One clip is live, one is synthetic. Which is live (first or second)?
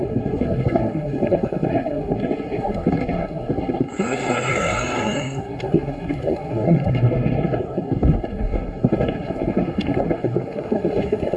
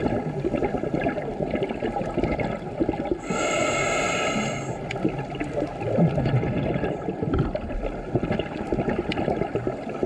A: second